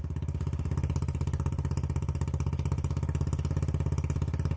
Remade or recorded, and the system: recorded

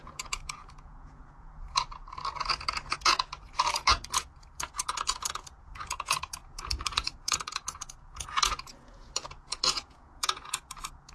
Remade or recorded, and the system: remade, vocoder, Vocos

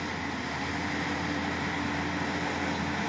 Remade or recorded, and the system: recorded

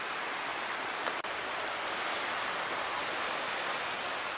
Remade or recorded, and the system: recorded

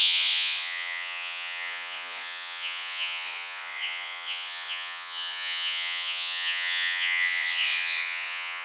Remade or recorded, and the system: remade, vocoder, Vocos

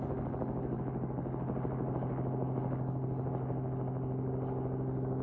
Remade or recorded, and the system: recorded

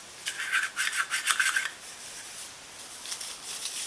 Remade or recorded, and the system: recorded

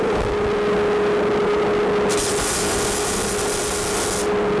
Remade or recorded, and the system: recorded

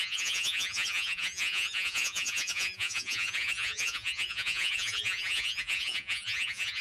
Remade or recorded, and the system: remade, vocoder, Vocos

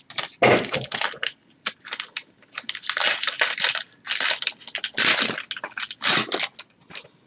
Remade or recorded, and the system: recorded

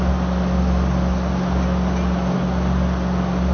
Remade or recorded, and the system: recorded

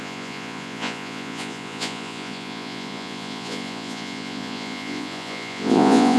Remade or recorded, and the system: remade, vocoder, Vocos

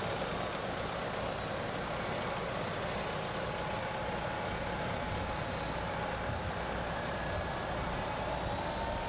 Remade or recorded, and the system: recorded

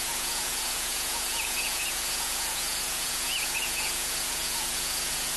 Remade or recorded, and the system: remade, vocoder, Vocos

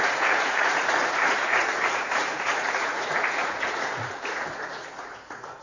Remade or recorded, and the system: remade, vocoder, Vocos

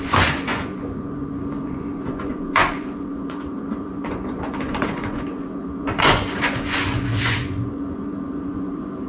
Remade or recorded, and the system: remade, vocoder, Vocos